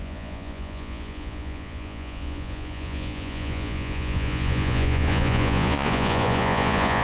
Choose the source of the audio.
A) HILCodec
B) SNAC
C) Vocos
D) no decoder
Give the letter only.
C